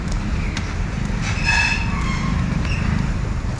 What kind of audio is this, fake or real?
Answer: real